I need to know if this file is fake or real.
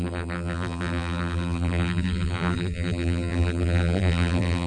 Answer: fake